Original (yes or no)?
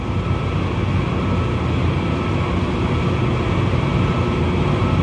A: yes